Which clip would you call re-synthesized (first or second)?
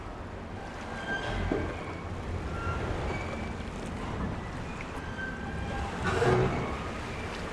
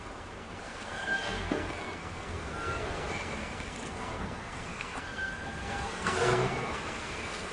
second